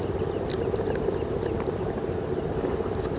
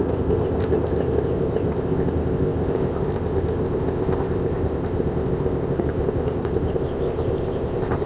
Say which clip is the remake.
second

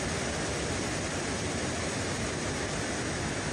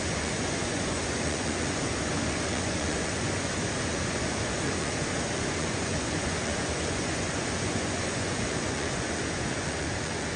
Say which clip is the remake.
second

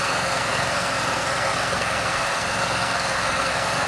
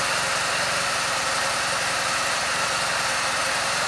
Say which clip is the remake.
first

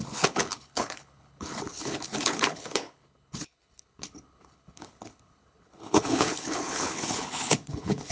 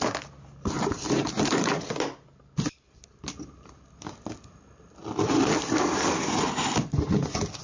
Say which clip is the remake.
first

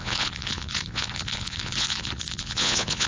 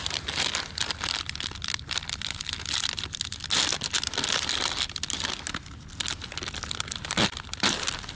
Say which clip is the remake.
first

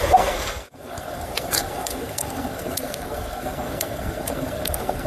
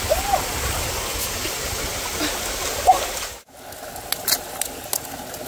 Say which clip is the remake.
first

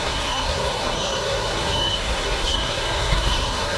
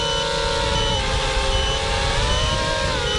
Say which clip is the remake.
first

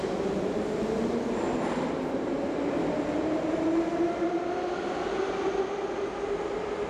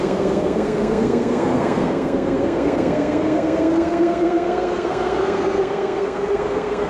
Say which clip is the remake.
second